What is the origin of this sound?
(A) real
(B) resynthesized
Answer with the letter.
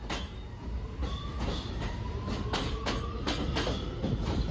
A